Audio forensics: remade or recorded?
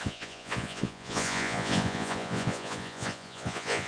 remade